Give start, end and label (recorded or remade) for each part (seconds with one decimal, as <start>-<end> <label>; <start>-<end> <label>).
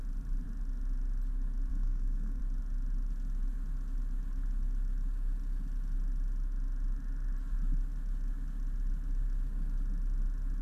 0.0-1.7 recorded; 1.7-2.4 remade; 2.4-10.6 recorded